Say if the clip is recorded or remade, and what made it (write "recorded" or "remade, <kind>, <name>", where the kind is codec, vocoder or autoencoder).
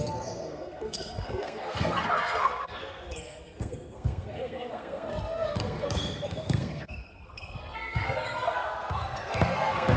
remade, codec, SNAC